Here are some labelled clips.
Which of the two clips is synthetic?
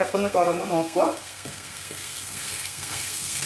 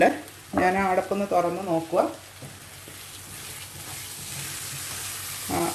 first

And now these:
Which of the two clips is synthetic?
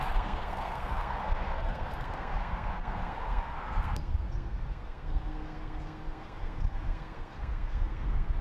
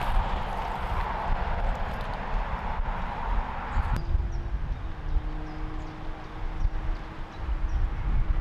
first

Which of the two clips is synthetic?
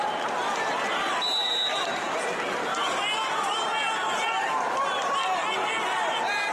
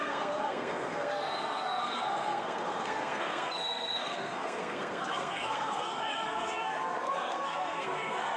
second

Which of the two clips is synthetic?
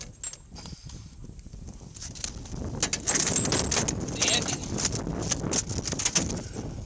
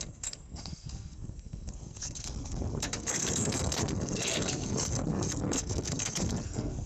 second